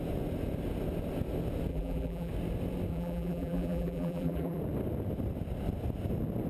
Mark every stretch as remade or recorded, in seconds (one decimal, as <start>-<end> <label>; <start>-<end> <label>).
0.0-1.7 recorded; 1.7-2.3 remade; 2.3-2.9 recorded; 2.9-4.6 remade; 4.6-6.5 recorded